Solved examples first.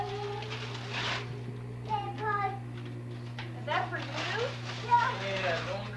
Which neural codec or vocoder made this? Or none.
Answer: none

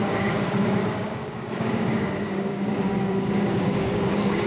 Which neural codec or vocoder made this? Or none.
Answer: codec, DAC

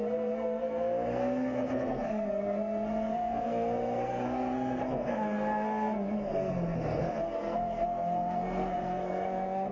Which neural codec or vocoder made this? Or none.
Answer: codec, SNAC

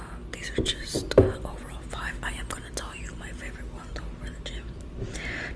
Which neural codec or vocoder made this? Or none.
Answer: none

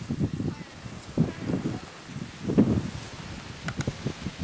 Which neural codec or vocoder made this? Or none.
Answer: none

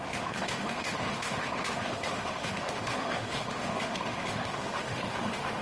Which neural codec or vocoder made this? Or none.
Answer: autoencoder, DAC-VAE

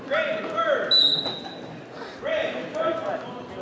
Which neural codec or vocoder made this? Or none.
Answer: none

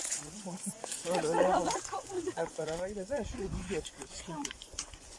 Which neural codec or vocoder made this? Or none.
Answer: vocoder, Vocos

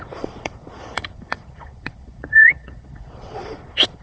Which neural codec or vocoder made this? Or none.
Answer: vocoder, Vocos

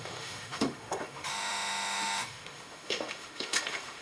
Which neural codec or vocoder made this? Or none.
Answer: autoencoder, DAC-VAE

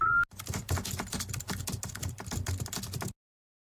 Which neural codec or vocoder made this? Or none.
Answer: none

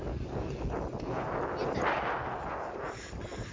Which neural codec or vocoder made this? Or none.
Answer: none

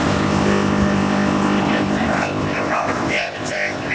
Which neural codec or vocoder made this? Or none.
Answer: codec, ZipCodec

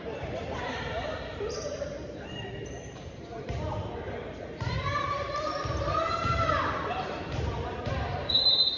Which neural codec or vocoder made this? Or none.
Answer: vocoder, BigVGAN v2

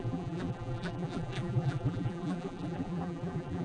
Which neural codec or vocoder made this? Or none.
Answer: vocoder, BigVGAN v2